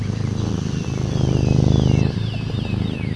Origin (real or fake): real